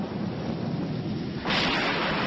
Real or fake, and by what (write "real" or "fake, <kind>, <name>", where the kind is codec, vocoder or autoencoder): real